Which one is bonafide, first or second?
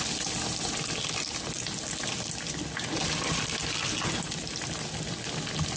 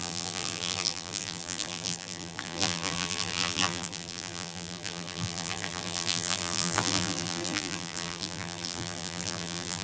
first